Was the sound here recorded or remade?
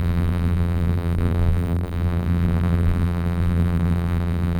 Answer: remade